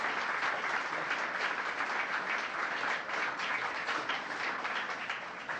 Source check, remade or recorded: recorded